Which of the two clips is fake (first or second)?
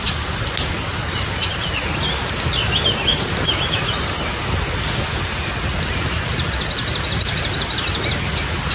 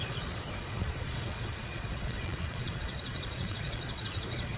second